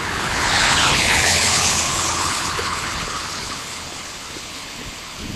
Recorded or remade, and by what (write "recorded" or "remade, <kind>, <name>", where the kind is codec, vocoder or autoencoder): remade, codec, HILCodec